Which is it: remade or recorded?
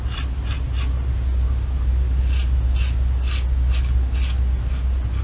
recorded